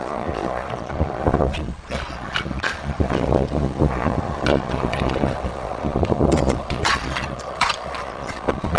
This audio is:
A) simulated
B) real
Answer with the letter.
A